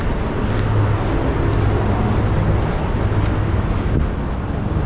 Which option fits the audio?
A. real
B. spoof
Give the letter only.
A